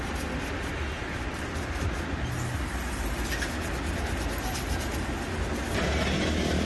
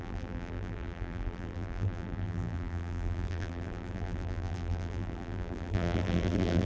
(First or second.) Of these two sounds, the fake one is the second